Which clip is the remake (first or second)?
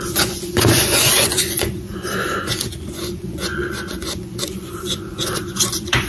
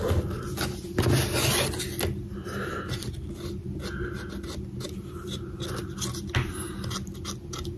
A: first